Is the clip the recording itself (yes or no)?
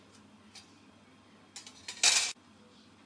yes